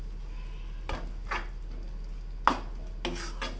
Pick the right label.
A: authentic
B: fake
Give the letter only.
A